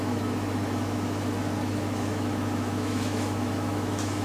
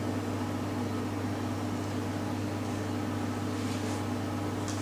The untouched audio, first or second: second